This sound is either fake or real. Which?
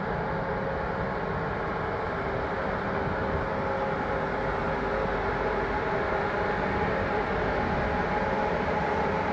real